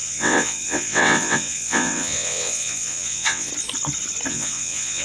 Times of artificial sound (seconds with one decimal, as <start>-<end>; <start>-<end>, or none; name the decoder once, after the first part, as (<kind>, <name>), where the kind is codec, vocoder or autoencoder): 0.0-3.5 (vocoder, WaveNeXt); 4.3-5.0